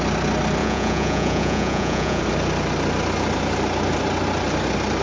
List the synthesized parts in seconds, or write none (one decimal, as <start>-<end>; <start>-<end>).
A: 0.6-2.2